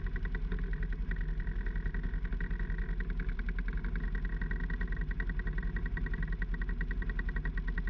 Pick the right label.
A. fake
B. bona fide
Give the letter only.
B